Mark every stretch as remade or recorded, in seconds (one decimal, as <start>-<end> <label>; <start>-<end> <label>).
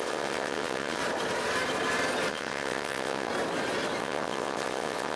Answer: 0.0-1.0 remade; 1.0-2.3 recorded; 2.3-3.3 remade; 3.3-4.0 recorded; 4.0-5.2 remade